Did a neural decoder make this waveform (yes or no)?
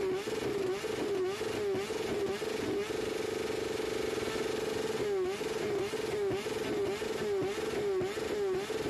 no